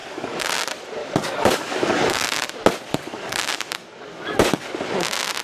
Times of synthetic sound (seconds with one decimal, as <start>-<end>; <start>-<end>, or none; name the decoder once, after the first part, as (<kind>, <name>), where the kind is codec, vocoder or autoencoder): 0.0-0.5 (codec, DAC); 1.0-2.5; 2.9-4.7